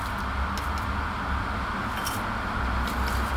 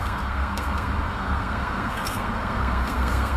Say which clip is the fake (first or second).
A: second